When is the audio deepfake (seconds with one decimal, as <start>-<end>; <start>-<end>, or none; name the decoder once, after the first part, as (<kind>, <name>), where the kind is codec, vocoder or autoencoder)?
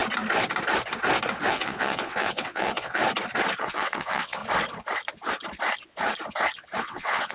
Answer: 1.5-3.0 (vocoder, WaveNeXt); 3.6-4.4; 6.8-7.3